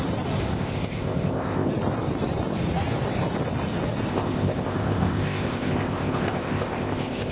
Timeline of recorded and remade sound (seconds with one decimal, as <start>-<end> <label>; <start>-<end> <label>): 0.0-0.5 recorded; 0.5-1.7 remade; 1.7-4.1 recorded; 4.1-7.3 remade